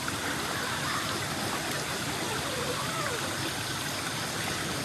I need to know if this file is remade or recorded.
recorded